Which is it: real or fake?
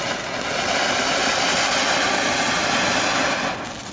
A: real